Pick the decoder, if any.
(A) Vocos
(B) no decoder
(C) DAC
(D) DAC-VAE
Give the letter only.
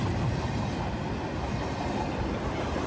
B